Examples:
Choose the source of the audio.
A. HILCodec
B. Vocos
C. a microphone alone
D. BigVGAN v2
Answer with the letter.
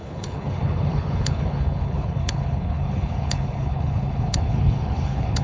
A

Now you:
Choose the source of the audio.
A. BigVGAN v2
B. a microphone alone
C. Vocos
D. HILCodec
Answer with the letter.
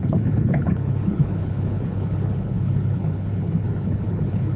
D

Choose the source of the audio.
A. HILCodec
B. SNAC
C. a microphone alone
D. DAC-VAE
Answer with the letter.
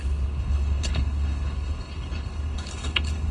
A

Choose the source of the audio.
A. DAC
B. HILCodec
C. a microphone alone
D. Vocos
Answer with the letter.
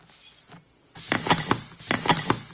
C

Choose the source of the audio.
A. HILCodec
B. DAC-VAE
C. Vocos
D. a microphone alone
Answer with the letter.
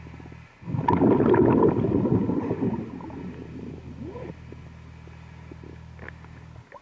D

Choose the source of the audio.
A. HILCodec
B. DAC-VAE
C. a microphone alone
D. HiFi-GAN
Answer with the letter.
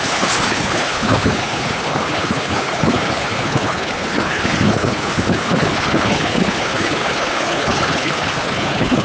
A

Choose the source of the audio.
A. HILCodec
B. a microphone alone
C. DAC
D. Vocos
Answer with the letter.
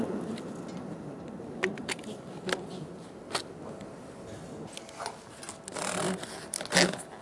B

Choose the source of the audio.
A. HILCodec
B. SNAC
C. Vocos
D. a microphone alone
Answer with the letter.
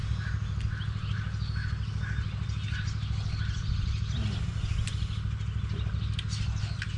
D